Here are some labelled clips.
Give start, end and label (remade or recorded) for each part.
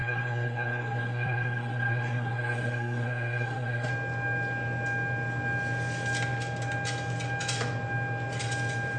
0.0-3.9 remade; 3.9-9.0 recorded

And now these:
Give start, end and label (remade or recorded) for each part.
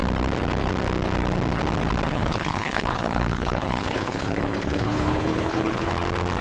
0.0-2.1 recorded; 2.1-5.9 remade; 5.9-6.4 recorded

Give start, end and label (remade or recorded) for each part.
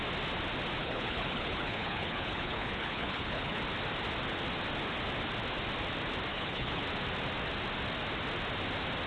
0.0-0.8 recorded; 0.8-3.6 remade; 3.6-6.3 recorded; 6.3-6.8 remade; 6.8-9.1 recorded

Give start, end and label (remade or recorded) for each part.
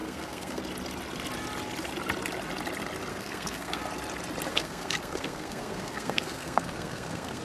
0.0-0.6 remade; 0.6-3.1 recorded; 3.1-3.8 remade; 3.8-4.5 recorded; 4.5-7.4 remade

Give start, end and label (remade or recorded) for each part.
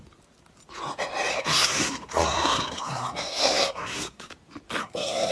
0.0-1.3 recorded; 1.3-4.3 remade; 4.3-4.8 recorded; 4.8-5.3 remade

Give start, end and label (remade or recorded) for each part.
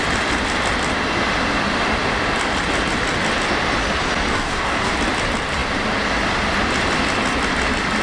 0.0-4.3 recorded; 4.3-4.9 remade; 4.9-8.0 recorded